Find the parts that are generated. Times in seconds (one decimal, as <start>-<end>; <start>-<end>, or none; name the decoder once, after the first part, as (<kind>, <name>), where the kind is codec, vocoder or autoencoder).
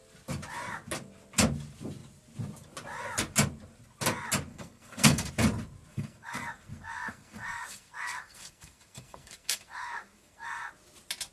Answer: 4.5-5.3 (codec, SNAC); 5.9-10.7